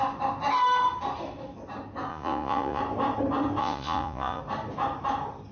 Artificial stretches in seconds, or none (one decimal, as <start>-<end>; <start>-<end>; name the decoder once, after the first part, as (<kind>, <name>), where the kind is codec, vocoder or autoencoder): 2.1-2.8 (vocoder, Vocos); 3.6-4.4